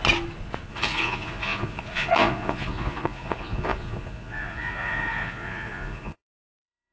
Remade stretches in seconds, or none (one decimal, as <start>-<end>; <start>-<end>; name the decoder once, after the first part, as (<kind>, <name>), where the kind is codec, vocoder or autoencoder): 0.7-6.9 (vocoder, Vocos)